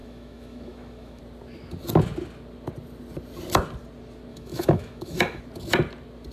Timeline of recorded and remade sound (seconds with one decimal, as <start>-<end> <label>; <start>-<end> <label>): 0.0-1.2 remade; 1.2-4.3 recorded; 4.3-5.4 remade; 5.4-6.3 recorded

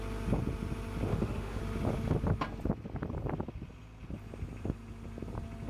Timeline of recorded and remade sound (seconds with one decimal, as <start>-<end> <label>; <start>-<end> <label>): 0.0-1.1 recorded; 1.1-1.6 remade; 1.6-5.7 recorded

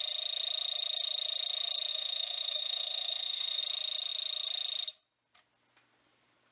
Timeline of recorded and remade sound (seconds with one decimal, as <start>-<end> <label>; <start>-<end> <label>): 0.0-1.9 recorded; 1.9-3.6 remade; 3.6-6.5 recorded

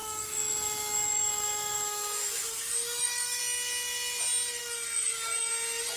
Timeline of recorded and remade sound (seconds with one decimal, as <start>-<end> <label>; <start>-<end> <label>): 0.0-3.4 remade; 3.4-4.6 recorded; 4.6-5.5 remade; 5.5-6.0 recorded

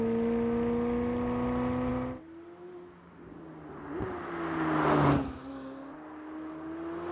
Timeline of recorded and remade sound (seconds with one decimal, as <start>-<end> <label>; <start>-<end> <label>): 0.0-7.1 recorded